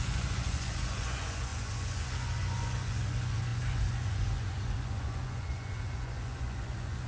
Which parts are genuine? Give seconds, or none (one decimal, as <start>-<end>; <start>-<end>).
none